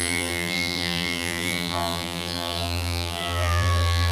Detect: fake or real fake